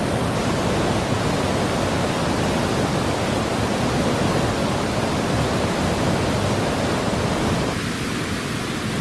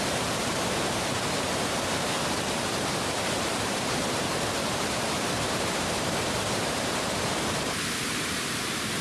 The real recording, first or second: first